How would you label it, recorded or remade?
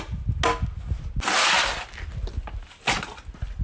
recorded